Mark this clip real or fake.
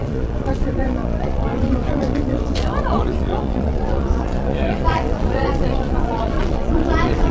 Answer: fake